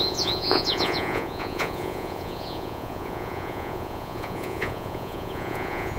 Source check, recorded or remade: remade